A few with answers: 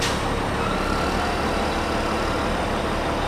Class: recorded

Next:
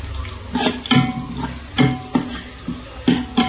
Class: recorded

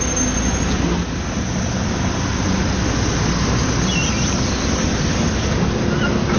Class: recorded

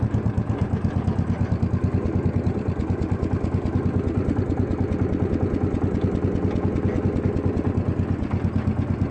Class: recorded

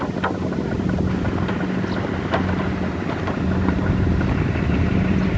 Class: recorded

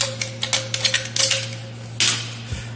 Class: recorded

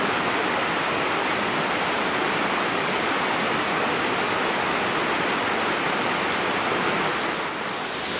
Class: recorded